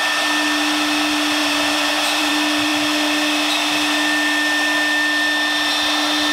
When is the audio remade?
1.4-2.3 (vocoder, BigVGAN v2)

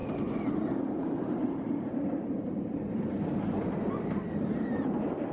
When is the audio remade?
0.0-3.2 (vocoder, BigVGAN v2)